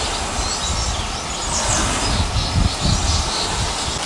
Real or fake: real